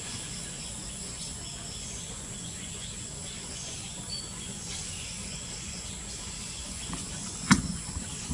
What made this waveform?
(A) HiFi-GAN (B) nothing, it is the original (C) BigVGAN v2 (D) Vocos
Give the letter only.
D